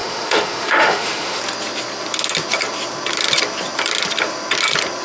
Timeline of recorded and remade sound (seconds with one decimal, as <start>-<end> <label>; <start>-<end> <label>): 0.0-1.4 remade; 1.4-5.0 recorded